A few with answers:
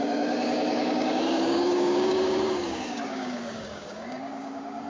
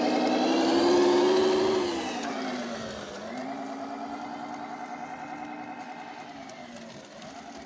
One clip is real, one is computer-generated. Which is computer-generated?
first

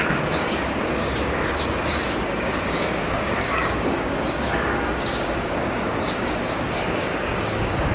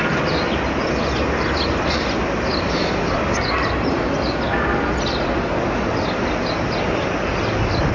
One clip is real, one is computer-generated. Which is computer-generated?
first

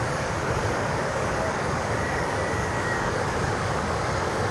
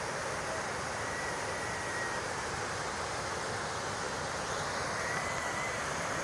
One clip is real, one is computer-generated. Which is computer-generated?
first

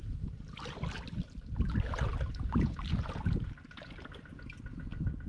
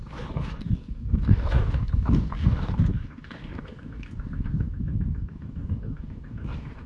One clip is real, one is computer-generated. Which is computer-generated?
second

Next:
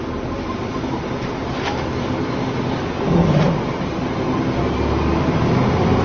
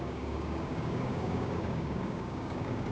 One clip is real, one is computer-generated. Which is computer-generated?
second